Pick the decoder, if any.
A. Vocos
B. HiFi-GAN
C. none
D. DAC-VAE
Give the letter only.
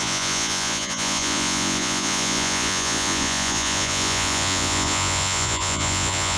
A